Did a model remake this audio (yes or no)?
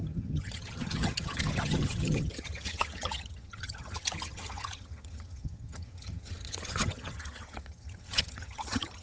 yes